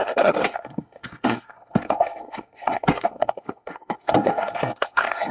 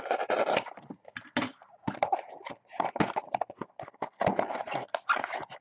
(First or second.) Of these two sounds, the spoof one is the first